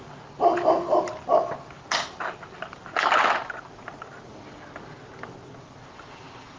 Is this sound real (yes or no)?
yes